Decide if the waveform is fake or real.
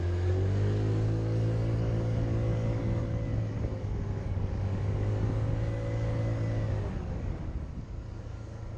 fake